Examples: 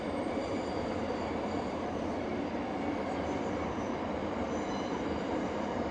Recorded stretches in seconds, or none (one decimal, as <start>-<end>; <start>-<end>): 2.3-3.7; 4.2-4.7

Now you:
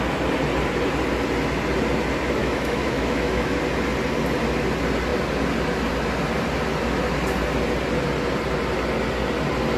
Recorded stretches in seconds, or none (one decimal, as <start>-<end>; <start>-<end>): 0.0-2.4; 3.6-9.8

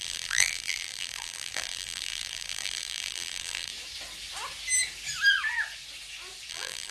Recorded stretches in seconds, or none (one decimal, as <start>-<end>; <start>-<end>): 3.7-6.5